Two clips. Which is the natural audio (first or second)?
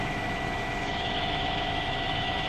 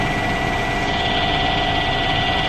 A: second